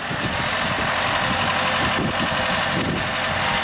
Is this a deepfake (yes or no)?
no